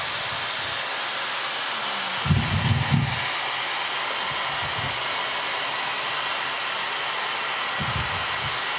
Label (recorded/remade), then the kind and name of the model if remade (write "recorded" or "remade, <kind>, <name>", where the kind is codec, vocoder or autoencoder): recorded